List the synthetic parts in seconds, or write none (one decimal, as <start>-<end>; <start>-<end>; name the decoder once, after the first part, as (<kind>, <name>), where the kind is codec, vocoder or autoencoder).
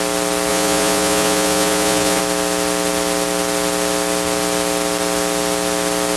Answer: 0.5-2.2 (vocoder, Vocos)